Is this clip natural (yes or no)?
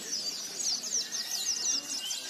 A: yes